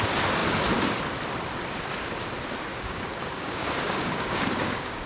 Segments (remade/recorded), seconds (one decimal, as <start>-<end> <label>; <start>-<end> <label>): 0.0-2.7 recorded; 2.7-5.1 remade